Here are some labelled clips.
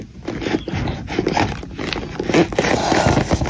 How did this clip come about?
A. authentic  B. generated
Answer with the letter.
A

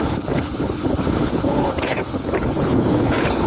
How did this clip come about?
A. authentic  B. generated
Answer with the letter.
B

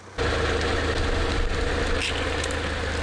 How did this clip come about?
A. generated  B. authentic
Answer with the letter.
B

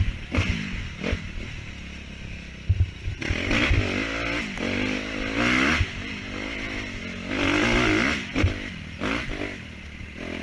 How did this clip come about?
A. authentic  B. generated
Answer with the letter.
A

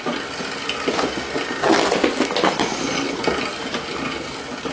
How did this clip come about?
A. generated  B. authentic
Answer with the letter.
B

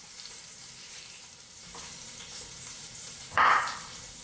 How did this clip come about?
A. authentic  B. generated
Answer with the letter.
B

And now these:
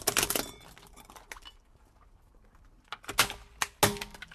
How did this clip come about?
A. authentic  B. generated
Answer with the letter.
A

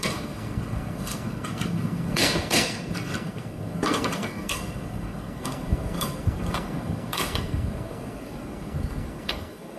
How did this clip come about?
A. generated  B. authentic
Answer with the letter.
A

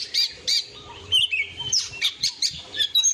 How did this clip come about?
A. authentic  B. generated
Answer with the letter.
B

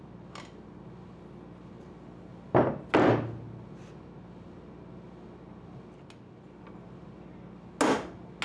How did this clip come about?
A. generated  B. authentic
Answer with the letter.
B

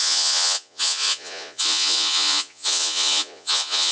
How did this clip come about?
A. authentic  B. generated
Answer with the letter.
B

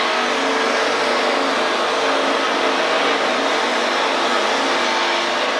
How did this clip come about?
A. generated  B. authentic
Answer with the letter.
B